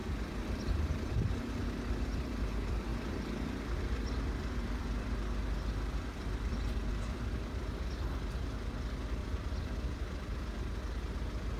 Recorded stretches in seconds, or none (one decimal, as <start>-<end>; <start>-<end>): 1.1-2.9; 6.9-9.2; 10.6-11.6